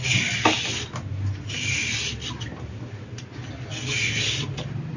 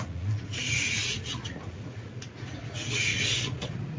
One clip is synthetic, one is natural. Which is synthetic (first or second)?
second